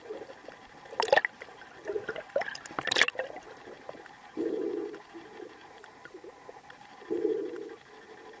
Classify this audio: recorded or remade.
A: recorded